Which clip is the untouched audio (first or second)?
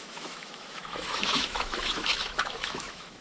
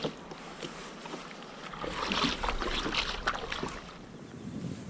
second